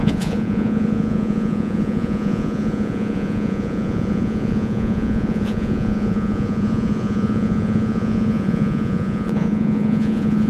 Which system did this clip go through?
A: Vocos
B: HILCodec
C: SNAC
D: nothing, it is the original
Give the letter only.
A